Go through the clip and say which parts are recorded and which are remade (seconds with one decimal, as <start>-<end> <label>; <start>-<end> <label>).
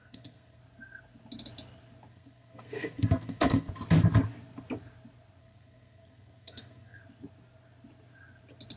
0.0-0.6 remade; 0.6-2.1 recorded; 2.1-3.7 remade; 3.7-5.4 recorded; 5.4-7.0 remade; 7.0-8.8 recorded